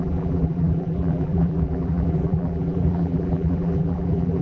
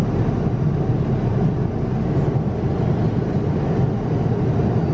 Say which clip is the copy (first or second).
first